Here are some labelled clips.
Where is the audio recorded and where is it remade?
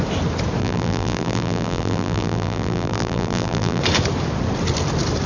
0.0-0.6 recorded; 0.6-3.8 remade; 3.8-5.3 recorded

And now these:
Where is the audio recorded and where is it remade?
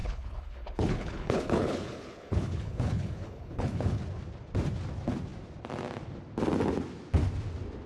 0.0-4.0 remade; 4.0-7.9 recorded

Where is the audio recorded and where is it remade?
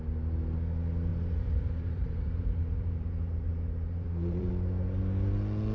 0.0-1.1 recorded; 1.1-4.5 remade; 4.5-5.7 recorded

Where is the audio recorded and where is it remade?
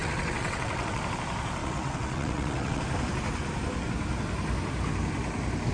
0.0-1.0 remade; 1.0-1.6 recorded; 1.6-2.8 remade; 2.8-5.7 recorded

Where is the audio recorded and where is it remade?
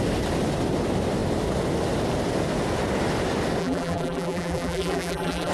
0.0-3.6 recorded; 3.6-5.5 remade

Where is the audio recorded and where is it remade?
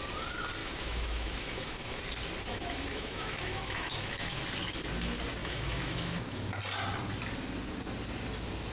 0.0-0.6 recorded; 0.6-2.0 remade; 2.0-2.5 recorded; 2.5-4.4 remade; 4.4-5.4 recorded; 5.4-6.6 remade; 6.6-8.7 recorded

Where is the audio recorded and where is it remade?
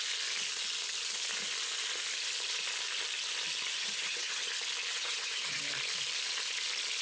0.0-3.7 recorded; 3.7-4.5 remade; 4.5-4.9 recorded; 4.9-5.6 remade; 5.6-7.0 recorded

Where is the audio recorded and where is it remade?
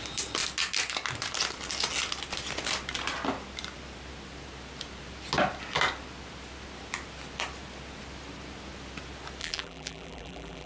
0.0-9.4 recorded; 9.4-10.7 remade